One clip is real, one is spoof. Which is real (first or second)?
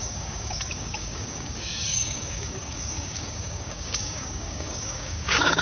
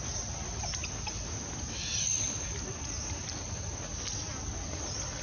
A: second